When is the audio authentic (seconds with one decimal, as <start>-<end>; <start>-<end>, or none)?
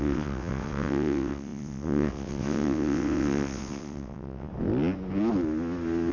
4.5-6.1